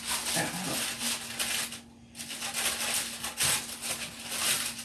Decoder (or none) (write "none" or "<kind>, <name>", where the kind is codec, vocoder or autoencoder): none